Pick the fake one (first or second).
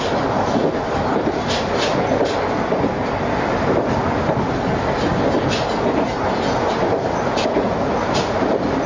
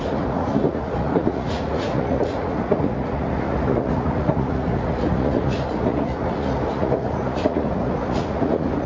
second